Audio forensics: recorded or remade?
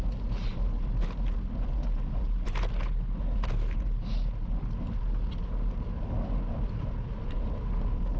recorded